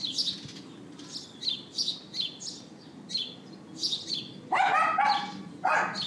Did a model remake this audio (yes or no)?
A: no